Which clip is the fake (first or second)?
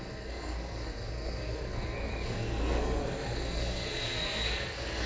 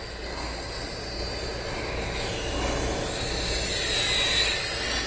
first